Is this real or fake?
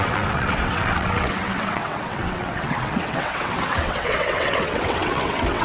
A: fake